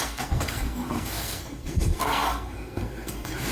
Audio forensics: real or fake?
fake